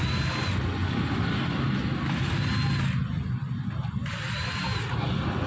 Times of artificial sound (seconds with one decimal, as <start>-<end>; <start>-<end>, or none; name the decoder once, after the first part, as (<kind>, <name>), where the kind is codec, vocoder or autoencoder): none